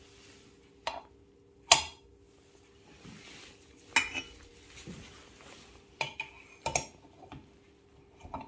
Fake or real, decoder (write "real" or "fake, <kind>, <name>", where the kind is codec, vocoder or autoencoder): real